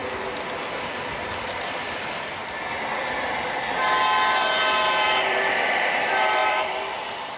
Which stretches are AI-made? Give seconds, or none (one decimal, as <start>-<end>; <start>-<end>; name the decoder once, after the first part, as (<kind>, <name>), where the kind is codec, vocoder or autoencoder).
0.6-2.4 (vocoder, BigVGAN v2); 4.9-7.4